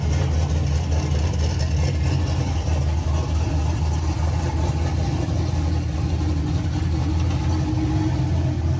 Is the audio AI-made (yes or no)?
no